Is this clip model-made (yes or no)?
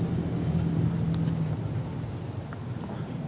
no